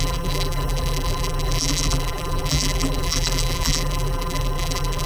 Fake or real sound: fake